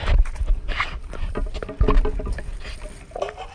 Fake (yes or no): no